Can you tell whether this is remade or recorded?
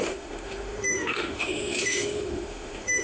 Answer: remade